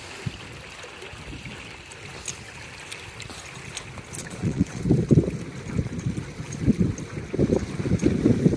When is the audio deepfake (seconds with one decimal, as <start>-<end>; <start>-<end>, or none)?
4.2-4.8